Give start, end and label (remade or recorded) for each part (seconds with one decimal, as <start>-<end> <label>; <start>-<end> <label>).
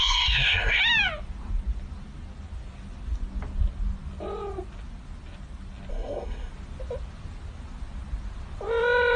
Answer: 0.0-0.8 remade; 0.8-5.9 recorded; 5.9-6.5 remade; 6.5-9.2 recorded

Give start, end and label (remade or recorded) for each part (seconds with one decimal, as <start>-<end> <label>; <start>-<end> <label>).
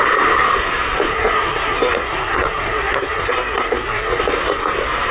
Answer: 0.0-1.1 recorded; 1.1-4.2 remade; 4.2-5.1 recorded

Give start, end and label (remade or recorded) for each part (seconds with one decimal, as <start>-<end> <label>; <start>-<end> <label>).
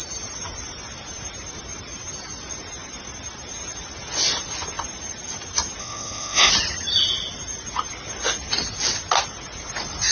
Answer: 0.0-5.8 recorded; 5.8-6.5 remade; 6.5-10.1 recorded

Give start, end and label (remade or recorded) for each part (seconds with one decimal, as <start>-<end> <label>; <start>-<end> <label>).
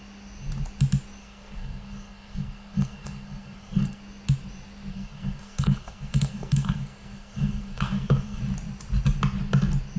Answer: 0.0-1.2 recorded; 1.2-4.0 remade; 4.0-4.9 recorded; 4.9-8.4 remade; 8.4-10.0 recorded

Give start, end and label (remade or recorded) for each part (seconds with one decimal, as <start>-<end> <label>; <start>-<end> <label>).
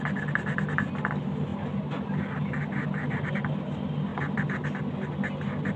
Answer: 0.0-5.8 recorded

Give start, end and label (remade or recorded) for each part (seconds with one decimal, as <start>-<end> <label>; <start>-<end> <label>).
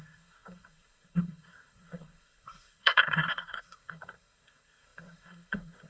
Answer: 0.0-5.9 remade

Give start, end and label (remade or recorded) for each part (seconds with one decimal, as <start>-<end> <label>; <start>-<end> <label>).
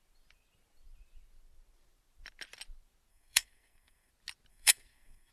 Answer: 0.0-3.1 recorded; 3.1-4.1 remade; 4.1-4.5 recorded; 4.5-5.3 remade